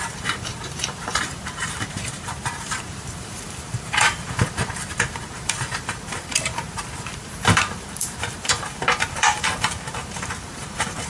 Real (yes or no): no